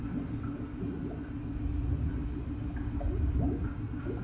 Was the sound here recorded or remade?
recorded